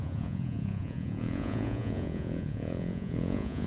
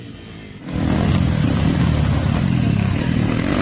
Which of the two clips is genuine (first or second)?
second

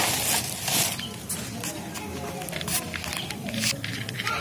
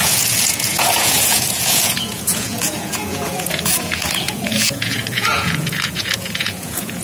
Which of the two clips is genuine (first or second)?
first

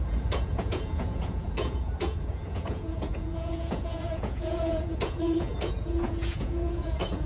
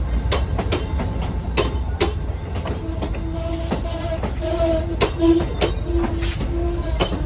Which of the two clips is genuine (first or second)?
second